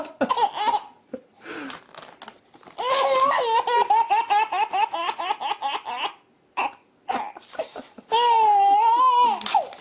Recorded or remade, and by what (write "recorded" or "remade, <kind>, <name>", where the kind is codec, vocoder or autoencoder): recorded